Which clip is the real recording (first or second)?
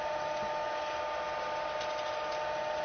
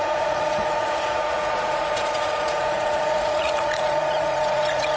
first